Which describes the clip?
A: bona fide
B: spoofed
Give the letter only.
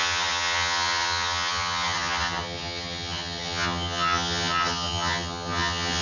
B